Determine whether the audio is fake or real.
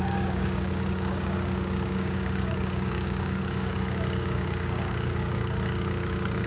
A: fake